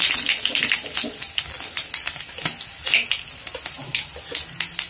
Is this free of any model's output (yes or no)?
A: yes